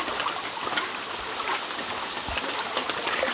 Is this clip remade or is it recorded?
recorded